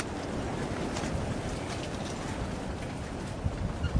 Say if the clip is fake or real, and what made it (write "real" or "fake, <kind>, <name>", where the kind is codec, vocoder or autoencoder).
real